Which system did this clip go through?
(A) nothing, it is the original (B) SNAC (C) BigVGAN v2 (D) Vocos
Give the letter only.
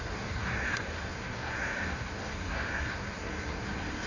B